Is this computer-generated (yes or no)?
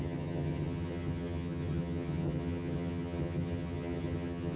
yes